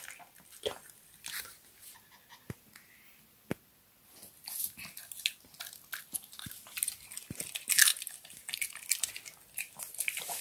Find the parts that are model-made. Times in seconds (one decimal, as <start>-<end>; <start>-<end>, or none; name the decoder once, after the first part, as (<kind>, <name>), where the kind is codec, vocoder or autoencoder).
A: 7.9-9.1 (vocoder, BigVGAN v2)